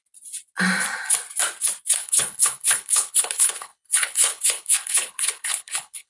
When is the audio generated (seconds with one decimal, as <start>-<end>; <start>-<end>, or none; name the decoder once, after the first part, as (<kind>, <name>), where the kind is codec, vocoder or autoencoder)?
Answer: 2.0-6.1 (codec, HILCodec)